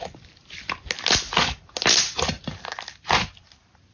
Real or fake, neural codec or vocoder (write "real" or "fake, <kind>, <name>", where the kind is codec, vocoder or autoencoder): real